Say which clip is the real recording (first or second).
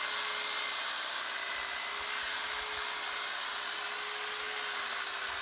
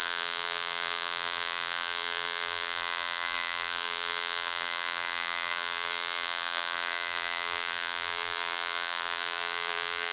first